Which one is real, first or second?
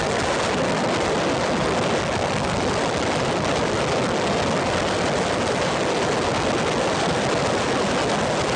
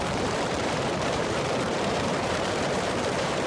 first